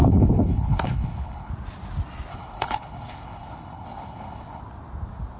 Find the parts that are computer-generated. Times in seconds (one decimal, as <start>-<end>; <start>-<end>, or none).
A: 0.0-1.5; 2.3-4.6